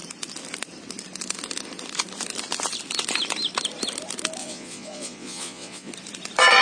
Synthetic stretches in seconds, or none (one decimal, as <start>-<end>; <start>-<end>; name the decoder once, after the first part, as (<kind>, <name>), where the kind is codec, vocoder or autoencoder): 4.4-5.9 (vocoder, Vocos)